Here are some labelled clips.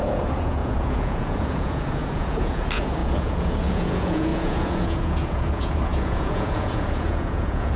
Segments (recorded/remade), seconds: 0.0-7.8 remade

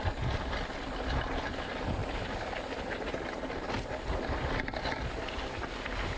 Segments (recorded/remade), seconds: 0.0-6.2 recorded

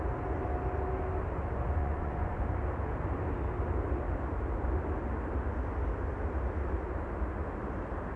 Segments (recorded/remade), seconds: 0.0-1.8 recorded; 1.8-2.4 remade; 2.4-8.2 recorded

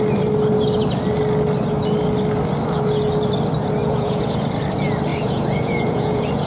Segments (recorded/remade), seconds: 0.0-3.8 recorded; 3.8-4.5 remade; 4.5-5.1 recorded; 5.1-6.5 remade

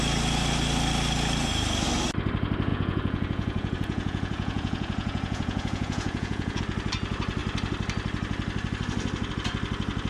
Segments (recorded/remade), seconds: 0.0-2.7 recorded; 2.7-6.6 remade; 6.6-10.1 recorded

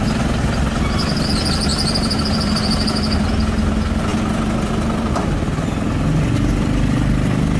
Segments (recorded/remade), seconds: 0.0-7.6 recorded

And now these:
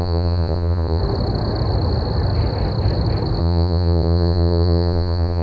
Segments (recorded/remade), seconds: 0.0-1.0 remade; 1.0-3.4 recorded; 3.4-5.4 remade